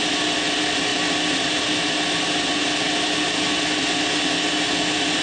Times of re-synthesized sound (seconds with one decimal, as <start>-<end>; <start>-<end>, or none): none